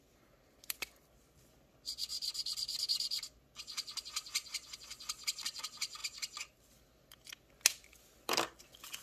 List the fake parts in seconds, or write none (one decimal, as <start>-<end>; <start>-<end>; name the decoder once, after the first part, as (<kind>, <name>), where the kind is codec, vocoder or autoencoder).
2.1-2.8 (vocoder, BigVGAN v2)

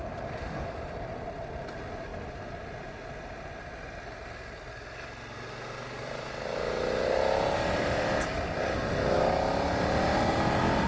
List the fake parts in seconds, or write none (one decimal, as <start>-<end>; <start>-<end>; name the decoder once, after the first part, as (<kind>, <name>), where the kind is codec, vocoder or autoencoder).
0.0-1.1 (vocoder, BigVGAN v2); 2.1-3.7; 6.0-8.8

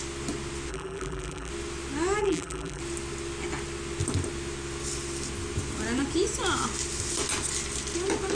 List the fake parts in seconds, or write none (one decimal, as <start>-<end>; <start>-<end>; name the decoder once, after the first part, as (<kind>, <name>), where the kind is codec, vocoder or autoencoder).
0.7-1.5 (vocoder, BigVGAN v2); 2.2-2.8

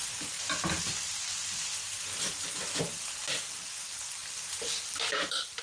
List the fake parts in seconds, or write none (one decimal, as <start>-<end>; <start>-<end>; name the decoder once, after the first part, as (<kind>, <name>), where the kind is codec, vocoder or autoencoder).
0.0-2.8 (vocoder, BigVGAN v2); 4.2-5.6

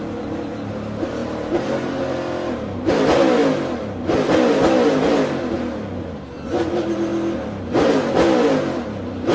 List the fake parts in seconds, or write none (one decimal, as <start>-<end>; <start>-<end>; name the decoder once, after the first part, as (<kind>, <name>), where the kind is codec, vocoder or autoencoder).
1.2-2.9 (vocoder, BigVGAN v2)